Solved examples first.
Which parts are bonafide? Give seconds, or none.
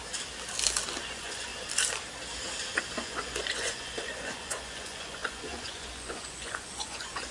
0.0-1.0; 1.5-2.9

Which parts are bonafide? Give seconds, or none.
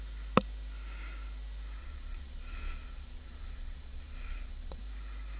0.0-1.8; 4.8-5.4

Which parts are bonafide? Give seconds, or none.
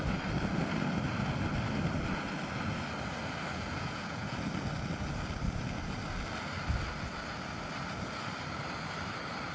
0.0-3.5; 4.4-9.5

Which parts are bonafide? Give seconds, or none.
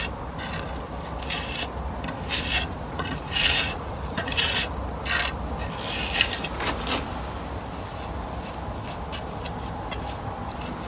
0.0-2.7; 4.7-10.9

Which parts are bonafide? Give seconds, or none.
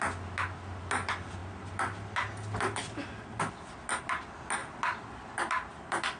0.0-6.2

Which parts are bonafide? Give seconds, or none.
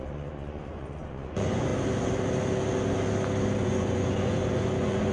1.7-3.6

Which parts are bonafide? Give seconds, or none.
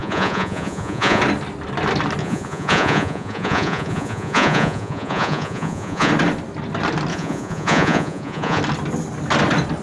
1.2-2.2; 6.1-7.1; 8.6-9.8